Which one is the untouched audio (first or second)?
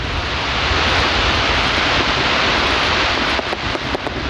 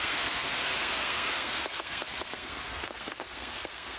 first